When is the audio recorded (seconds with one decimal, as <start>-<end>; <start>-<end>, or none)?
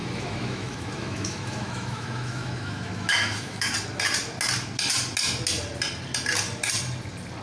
3.7-7.4